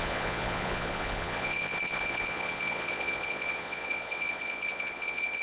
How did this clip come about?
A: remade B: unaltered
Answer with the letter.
A